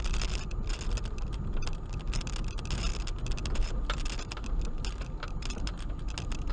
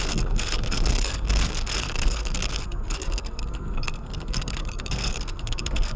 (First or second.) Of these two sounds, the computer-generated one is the second